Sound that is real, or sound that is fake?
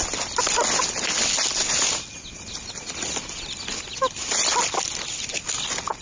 real